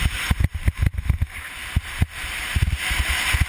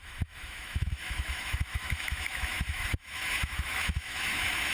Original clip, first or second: first